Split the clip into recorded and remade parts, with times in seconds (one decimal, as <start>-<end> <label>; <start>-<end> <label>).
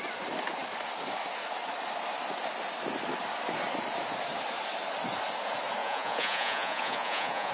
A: 0.0-5.8 recorded; 5.8-7.5 remade